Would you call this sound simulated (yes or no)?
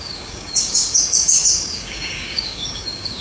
yes